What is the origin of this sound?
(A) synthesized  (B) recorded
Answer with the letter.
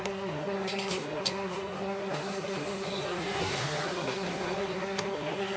A